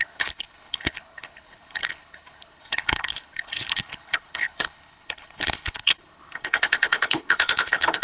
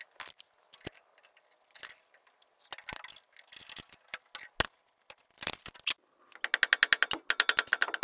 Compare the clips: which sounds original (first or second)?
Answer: second